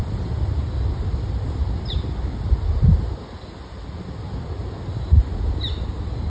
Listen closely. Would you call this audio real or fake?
real